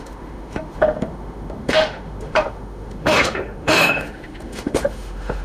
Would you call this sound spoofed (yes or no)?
yes